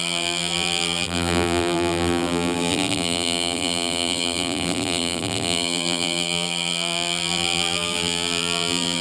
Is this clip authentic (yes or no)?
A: no